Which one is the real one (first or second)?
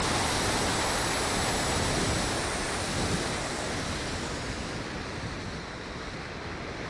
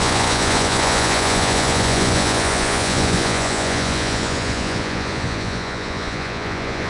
first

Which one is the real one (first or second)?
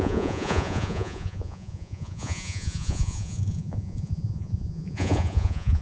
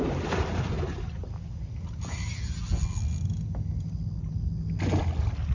second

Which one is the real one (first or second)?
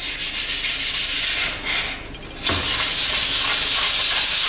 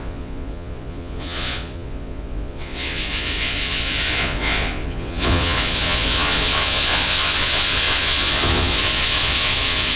first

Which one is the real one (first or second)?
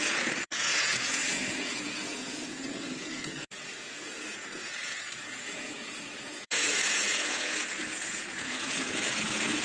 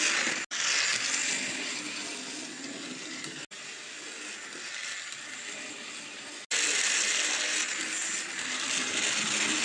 second